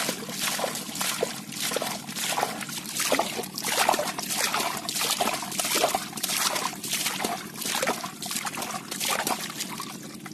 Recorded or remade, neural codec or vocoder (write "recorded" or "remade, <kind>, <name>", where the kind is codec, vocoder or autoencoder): recorded